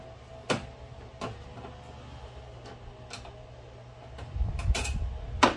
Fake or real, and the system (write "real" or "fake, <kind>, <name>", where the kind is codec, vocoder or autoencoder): real